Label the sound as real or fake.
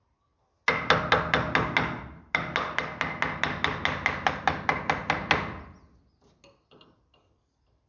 real